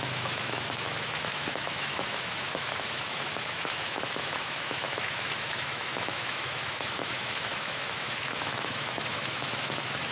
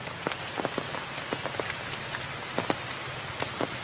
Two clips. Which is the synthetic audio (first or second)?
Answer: first